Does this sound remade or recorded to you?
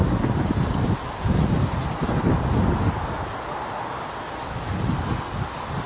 recorded